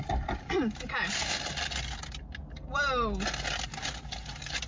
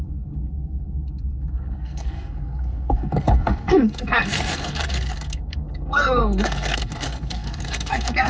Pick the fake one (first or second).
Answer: second